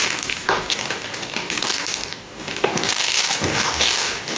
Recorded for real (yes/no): no